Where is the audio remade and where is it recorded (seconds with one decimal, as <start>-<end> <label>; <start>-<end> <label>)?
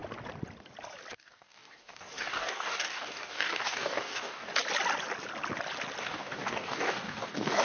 0.0-1.1 recorded; 1.1-4.5 remade; 4.5-6.0 recorded; 6.0-7.6 remade